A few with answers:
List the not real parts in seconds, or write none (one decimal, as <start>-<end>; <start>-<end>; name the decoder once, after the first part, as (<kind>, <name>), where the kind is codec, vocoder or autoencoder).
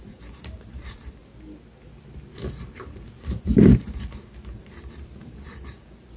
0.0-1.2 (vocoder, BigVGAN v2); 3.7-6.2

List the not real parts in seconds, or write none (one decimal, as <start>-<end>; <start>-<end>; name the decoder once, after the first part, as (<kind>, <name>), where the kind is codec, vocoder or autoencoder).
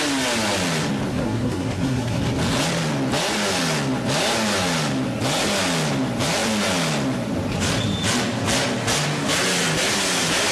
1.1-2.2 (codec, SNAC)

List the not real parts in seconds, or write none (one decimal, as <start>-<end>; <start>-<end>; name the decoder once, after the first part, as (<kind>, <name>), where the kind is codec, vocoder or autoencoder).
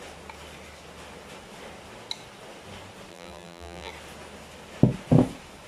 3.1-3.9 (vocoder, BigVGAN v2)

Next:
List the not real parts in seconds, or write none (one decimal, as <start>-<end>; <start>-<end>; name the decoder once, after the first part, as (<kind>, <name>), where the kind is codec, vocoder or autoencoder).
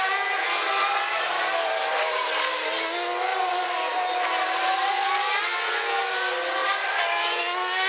3.3-5.1 (vocoder, BigVGAN v2); 6.6-7.4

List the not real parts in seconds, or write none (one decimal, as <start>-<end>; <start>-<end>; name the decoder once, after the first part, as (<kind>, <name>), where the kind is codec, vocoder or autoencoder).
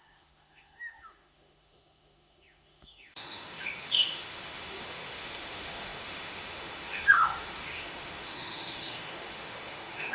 0.0-10.1 (autoencoder, DAC-VAE)